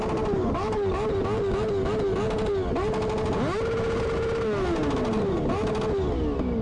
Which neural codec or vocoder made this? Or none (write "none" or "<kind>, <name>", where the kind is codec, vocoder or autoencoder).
none